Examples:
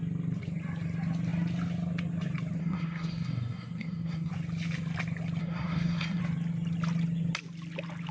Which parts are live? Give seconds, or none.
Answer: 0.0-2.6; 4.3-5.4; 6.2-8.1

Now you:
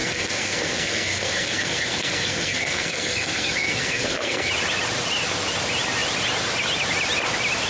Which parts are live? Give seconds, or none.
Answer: 4.5-7.7

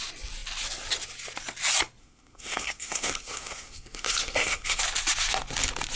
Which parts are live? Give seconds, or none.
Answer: 0.0-2.0; 4.8-6.0

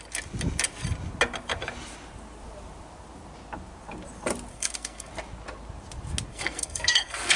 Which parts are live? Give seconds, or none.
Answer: 0.0-4.5; 5.1-6.3

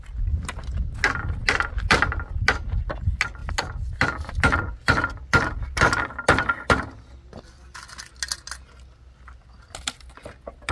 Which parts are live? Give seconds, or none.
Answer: 0.0-10.7

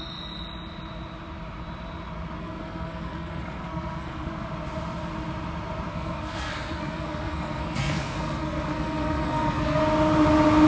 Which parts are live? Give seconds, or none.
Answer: 0.0-2.4; 4.5-5.9; 9.8-10.7

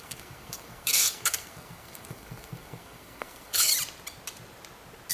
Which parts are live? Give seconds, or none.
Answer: 3.7-5.1

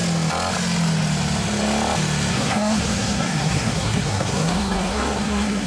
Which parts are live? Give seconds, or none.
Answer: 0.0-2.3